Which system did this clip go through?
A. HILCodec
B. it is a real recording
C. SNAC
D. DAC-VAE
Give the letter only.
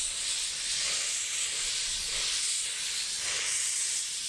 B